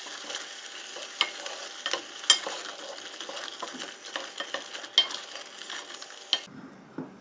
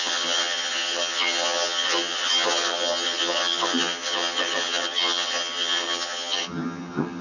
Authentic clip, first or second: first